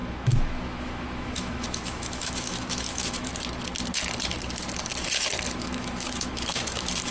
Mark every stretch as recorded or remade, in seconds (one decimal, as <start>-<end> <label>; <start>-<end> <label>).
0.0-3.3 remade; 3.3-5.5 recorded; 5.5-7.1 remade